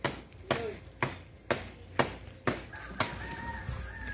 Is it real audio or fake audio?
real